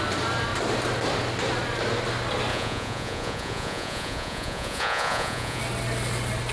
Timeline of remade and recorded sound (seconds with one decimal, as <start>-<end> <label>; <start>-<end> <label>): 0.0-2.5 recorded; 2.5-5.6 remade; 5.6-6.5 recorded